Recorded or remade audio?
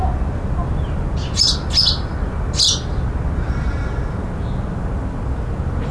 recorded